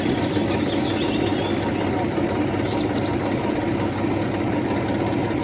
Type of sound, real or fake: real